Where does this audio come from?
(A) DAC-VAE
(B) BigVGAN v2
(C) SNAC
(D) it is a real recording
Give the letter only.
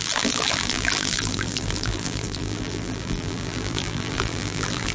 B